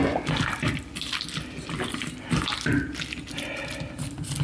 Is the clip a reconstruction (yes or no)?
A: no